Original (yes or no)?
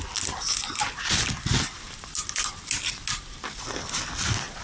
yes